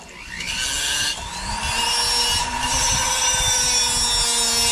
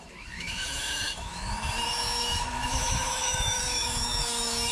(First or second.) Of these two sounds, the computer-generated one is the second